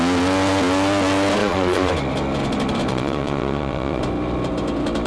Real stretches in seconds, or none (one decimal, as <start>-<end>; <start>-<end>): 0.0-1.4; 1.9-2.9; 4.0-5.1